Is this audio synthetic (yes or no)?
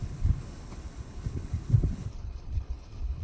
yes